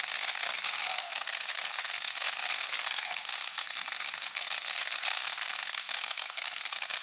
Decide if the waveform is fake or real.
fake